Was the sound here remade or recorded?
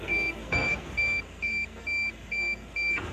remade